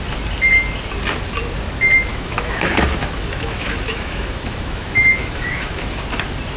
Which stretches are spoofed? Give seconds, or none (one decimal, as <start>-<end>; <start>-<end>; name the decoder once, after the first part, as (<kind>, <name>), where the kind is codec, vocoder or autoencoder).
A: 2.1-6.0 (autoencoder, DAC-VAE)

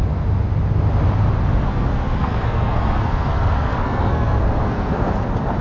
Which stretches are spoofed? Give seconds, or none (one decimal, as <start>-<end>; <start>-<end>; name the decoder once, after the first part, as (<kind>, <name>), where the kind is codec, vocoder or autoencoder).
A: 1.7-5.1 (codec, SNAC)

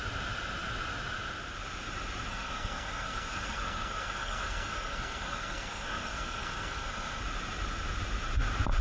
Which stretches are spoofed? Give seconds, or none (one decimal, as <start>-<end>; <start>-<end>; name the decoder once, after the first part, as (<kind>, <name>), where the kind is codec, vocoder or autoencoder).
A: 2.3-7.2 (codec, SNAC)

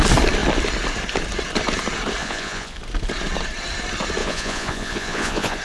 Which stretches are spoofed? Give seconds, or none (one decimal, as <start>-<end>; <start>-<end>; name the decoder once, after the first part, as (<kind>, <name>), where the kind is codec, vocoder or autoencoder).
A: 2.2-2.8 (vocoder, Vocos); 4.2-5.6

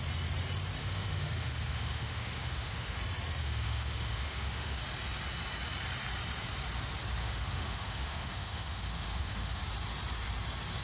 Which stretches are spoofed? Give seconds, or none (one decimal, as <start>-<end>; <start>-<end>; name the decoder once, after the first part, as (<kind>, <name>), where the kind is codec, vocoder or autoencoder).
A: 0.8-3.0 (autoencoder, DAC-VAE); 3.4-4.8; 7.2-9.6

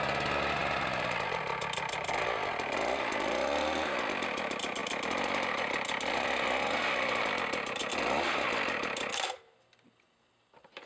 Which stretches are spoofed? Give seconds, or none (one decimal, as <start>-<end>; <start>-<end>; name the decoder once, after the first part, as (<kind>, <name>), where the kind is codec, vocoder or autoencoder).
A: none

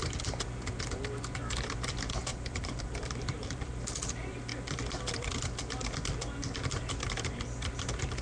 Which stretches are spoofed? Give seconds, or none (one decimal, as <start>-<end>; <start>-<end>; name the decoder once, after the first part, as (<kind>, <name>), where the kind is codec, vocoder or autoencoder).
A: 2.3-3.7 (vocoder, BigVGAN v2)